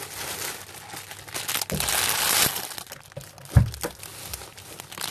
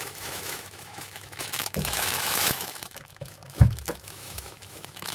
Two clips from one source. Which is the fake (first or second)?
second